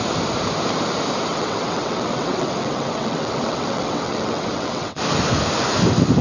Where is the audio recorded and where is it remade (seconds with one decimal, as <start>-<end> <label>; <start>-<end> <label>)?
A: 0.0-1.3 recorded; 1.3-5.0 remade; 5.0-6.2 recorded